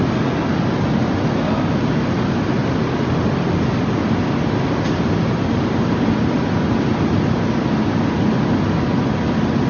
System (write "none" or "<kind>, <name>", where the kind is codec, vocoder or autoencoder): none